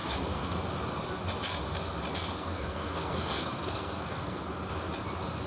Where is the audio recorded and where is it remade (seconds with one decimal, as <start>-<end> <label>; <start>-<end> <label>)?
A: 0.0-0.6 remade; 0.6-2.1 recorded; 2.1-4.4 remade; 4.4-5.5 recorded

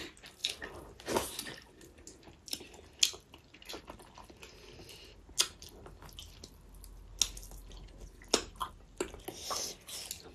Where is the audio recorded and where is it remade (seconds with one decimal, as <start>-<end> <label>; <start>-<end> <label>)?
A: 0.0-10.3 recorded

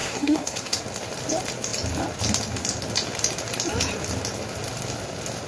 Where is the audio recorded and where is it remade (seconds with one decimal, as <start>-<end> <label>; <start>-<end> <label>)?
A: 0.0-0.8 remade; 0.8-5.5 recorded

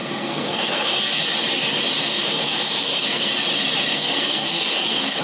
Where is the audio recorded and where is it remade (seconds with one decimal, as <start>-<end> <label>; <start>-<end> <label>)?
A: 0.0-1.3 remade; 1.3-2.0 recorded; 2.0-3.3 remade; 3.3-3.9 recorded; 3.9-5.2 remade

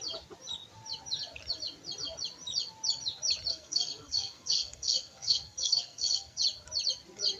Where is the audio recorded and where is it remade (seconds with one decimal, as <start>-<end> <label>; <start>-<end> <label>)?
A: 0.0-3.5 recorded; 3.5-6.4 remade; 6.4-7.4 recorded

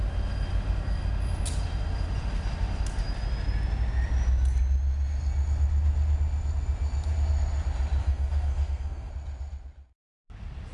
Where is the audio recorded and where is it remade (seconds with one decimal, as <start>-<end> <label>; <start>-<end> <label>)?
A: 0.0-8.0 recorded; 8.0-9.1 remade; 9.1-10.7 recorded